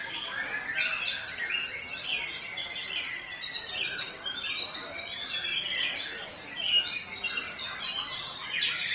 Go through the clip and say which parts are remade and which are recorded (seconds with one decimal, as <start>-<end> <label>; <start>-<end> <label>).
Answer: 0.0-8.9 recorded